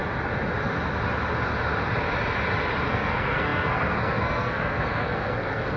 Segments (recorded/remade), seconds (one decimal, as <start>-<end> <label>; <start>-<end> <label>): 0.0-2.9 recorded; 2.9-5.8 remade